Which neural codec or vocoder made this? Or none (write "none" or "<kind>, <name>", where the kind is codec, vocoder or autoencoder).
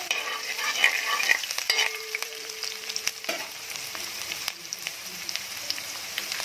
vocoder, BigVGAN v2